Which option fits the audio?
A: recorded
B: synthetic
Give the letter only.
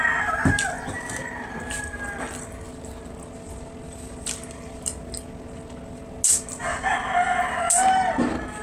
A